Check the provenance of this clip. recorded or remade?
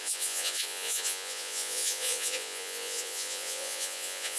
remade